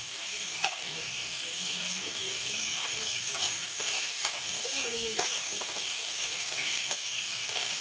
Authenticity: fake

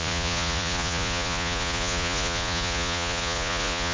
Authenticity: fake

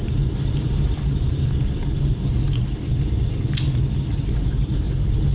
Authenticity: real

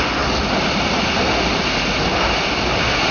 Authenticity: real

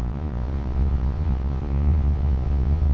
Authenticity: fake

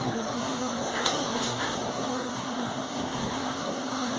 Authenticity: fake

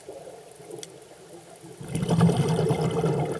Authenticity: real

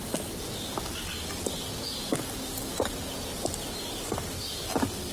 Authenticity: real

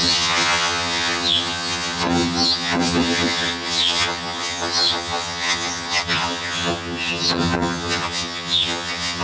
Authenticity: fake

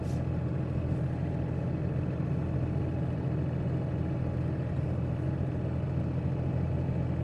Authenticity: real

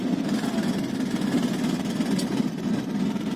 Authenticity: real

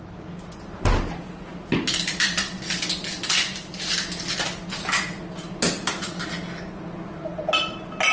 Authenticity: real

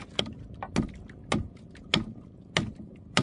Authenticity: real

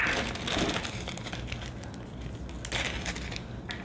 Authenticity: real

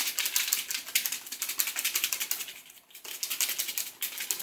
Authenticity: real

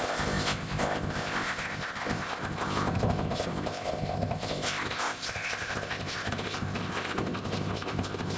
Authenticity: fake